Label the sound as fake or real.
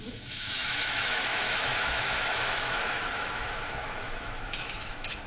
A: fake